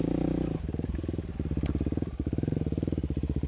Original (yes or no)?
yes